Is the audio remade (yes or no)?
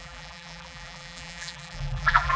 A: yes